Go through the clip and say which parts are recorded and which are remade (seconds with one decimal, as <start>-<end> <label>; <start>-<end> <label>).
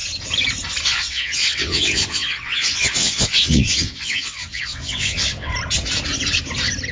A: 0.0-0.8 recorded; 0.8-5.5 remade; 5.5-6.9 recorded